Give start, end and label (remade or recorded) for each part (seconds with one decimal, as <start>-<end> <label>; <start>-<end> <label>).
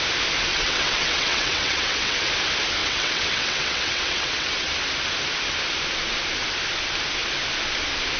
0.0-0.5 recorded; 0.5-2.3 remade; 2.3-2.8 recorded; 2.8-4.7 remade; 4.7-8.2 recorded